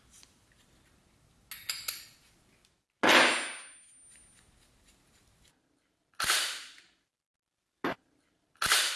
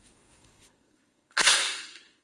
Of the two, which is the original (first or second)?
first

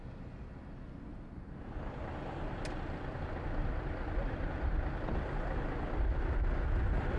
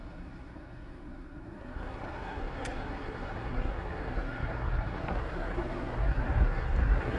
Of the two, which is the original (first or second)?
first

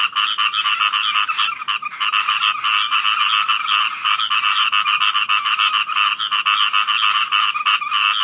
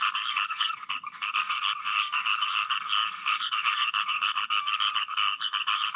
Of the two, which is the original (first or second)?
first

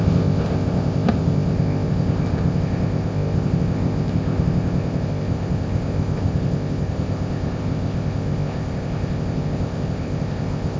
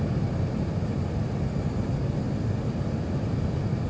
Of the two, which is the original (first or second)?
second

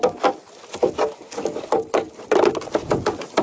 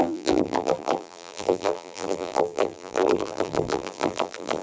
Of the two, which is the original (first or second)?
first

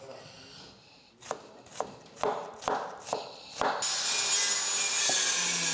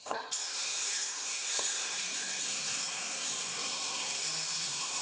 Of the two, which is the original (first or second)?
first